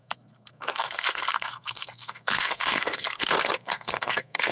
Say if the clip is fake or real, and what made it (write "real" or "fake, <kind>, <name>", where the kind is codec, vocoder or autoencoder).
fake, codec, SNAC